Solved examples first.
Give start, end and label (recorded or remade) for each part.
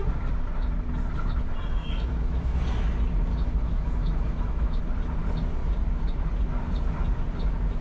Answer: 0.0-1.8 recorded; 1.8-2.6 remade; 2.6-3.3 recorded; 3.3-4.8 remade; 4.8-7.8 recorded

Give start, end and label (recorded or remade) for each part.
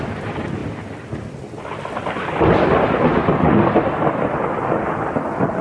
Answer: 0.0-5.6 recorded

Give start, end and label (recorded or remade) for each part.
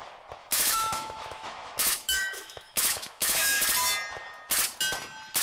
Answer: 0.0-0.4 recorded; 0.4-3.6 remade; 3.6-5.4 recorded